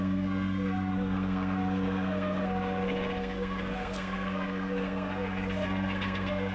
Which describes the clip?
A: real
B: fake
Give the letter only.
B